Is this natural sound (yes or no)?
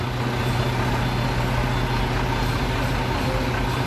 yes